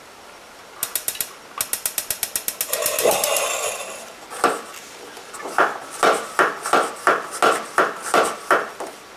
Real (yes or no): yes